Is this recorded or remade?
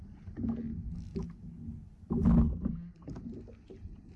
recorded